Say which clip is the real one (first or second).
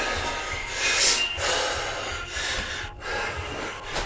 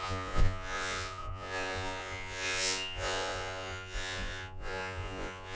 first